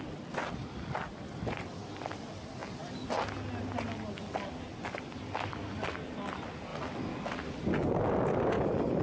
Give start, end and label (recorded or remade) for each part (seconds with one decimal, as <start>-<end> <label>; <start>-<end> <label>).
0.0-9.0 recorded